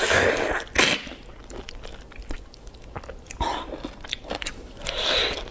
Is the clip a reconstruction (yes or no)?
no